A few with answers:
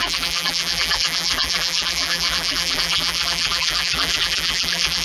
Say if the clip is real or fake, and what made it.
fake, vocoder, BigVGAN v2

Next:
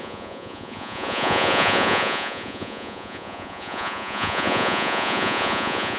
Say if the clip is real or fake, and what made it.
fake, vocoder, Vocos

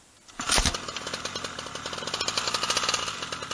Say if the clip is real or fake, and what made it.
real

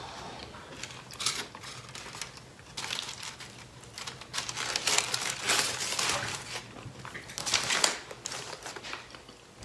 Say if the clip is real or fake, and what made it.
real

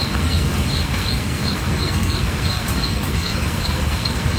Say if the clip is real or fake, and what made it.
fake, codec, SNAC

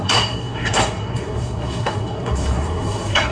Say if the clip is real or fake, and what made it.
fake, codec, SNAC